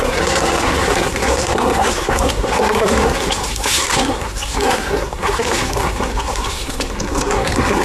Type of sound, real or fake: fake